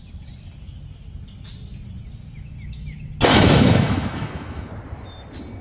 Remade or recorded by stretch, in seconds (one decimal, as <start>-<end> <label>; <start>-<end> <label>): 0.0-3.3 recorded; 3.3-4.7 remade; 4.7-5.6 recorded